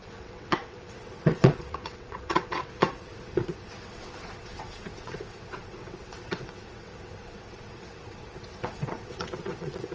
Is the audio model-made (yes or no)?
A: yes